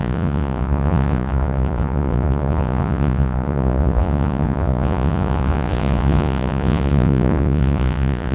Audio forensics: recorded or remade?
remade